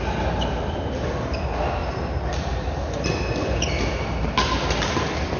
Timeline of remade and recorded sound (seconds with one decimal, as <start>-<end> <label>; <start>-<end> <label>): 0.0-5.4 recorded